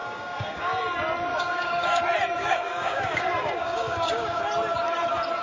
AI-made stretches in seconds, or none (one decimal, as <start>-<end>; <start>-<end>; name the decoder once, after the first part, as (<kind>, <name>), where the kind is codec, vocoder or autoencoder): 0.0-0.8 (codec, DAC); 1.3-2.0; 2.4-4.4